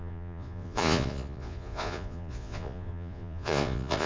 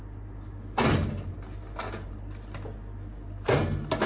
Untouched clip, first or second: second